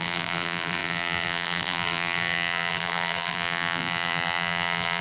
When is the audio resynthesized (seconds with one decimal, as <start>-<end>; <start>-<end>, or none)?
0.0-5.0